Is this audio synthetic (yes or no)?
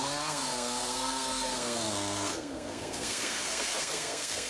yes